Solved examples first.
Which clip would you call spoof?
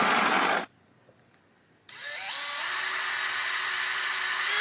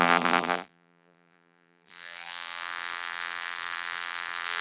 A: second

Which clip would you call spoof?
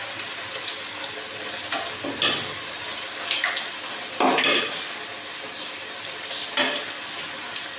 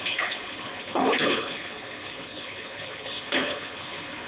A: second